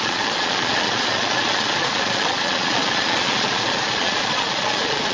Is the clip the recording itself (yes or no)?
no